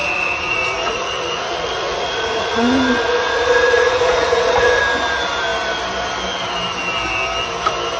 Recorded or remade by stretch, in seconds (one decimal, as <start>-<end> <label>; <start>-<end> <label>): 0.0-4.8 remade; 4.8-8.0 recorded